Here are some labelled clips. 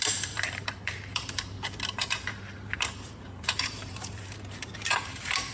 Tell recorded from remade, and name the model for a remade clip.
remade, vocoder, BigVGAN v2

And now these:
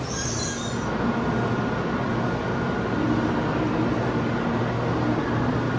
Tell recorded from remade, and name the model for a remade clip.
recorded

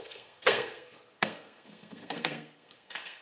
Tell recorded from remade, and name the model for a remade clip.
remade, codec, SNAC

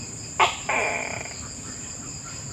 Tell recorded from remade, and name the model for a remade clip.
remade, vocoder, BigVGAN v2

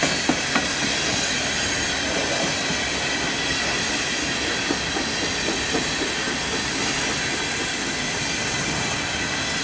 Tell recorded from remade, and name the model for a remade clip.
recorded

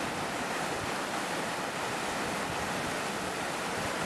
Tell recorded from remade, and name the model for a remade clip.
recorded